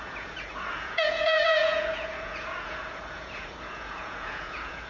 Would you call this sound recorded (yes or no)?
no